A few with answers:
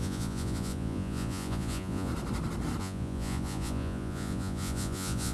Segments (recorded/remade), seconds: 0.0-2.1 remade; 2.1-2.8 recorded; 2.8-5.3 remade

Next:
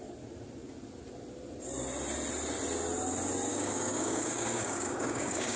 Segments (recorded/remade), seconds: 0.0-3.5 recorded; 3.5-5.6 remade